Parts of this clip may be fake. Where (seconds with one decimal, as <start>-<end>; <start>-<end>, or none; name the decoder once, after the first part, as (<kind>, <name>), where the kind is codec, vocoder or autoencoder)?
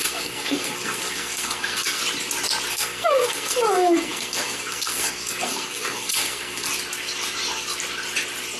0.0-2.0 (codec, SNAC); 2.7-6.7